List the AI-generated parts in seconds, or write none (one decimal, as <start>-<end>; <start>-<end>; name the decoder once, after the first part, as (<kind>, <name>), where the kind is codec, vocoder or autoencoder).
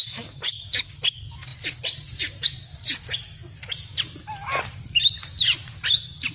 none